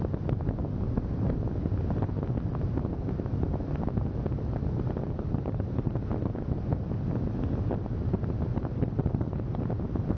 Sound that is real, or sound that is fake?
real